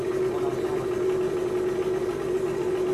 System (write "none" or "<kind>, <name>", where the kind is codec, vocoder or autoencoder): none